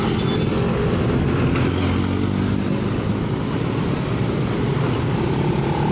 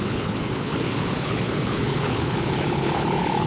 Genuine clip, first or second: first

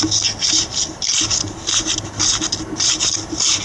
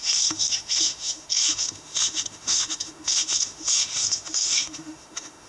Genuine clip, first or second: first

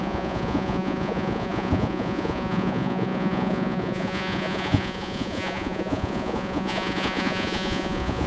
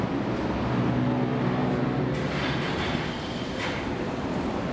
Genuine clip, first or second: second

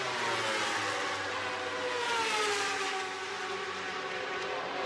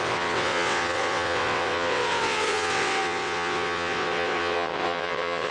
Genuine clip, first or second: first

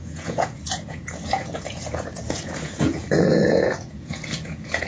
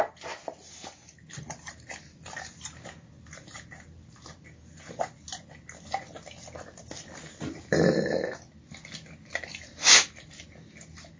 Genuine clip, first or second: second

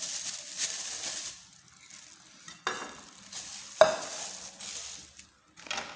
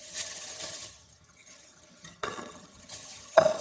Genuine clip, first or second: first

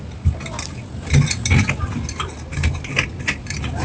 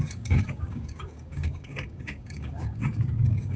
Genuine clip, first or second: first